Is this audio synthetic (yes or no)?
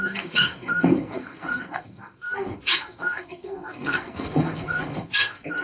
yes